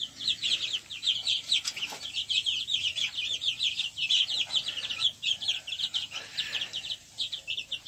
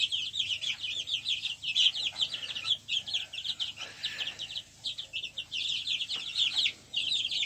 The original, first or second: second